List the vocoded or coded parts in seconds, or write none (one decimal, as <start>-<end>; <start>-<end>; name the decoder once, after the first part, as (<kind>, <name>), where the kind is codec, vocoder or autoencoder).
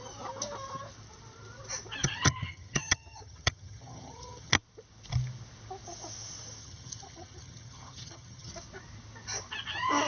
2.0-4.5 (vocoder, HiFi-GAN); 6.6-8.5